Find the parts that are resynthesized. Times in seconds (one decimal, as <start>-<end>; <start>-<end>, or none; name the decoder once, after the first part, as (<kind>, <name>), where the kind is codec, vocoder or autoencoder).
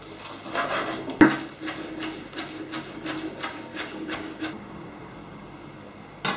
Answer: 3.7-4.5 (codec, DAC)